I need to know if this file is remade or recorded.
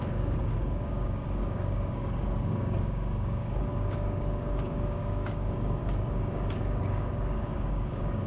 remade